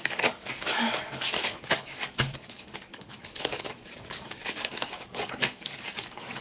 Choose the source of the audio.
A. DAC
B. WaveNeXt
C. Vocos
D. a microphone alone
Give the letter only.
A